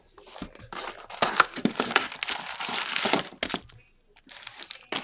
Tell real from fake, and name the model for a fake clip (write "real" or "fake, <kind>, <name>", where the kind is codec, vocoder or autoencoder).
real